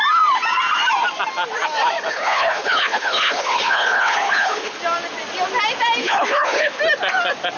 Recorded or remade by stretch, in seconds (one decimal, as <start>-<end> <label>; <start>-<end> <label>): 0.0-2.1 recorded; 2.1-4.8 remade; 4.8-6.0 recorded; 6.0-6.8 remade; 6.8-7.6 recorded